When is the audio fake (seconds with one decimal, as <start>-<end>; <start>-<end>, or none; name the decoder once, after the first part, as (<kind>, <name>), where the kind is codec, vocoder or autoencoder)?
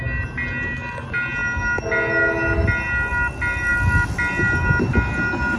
none